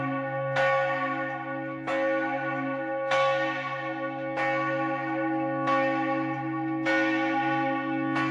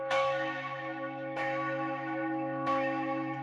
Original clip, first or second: first